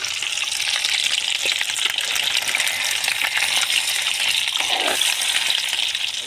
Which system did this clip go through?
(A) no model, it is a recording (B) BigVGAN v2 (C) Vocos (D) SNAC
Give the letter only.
A